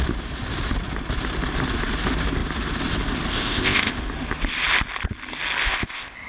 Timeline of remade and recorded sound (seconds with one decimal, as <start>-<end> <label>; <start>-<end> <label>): 0.0-3.3 recorded; 3.3-4.0 remade; 4.0-5.6 recorded; 5.6-6.3 remade